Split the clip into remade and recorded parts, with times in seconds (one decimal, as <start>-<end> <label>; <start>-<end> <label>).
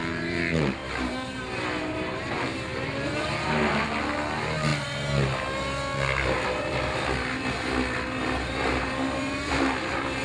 0.0-2.7 remade; 2.7-4.3 recorded; 4.3-4.7 remade; 4.7-8.7 recorded; 8.7-10.2 remade